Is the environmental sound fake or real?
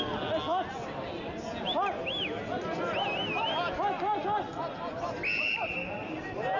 real